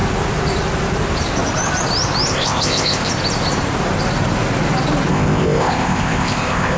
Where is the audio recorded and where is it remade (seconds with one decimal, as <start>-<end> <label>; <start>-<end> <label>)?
0.0-2.3 recorded; 2.3-3.1 remade; 3.1-5.1 recorded; 5.1-6.8 remade